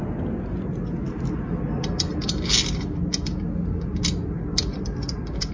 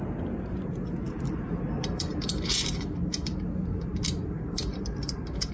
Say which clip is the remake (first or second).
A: second